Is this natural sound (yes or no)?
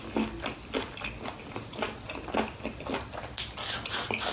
yes